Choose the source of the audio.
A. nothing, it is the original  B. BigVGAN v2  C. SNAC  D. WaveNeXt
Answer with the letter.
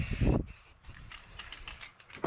B